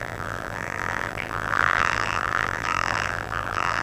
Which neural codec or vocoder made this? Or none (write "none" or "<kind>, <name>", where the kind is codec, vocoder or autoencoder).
vocoder, BigVGAN v2